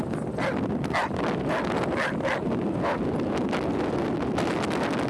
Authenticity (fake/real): real